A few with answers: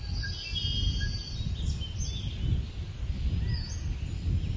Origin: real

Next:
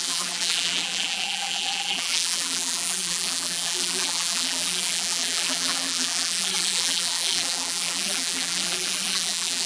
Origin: fake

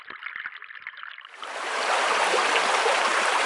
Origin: real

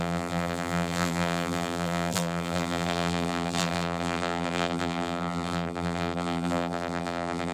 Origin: fake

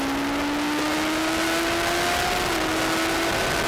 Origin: real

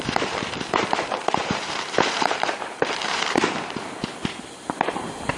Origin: fake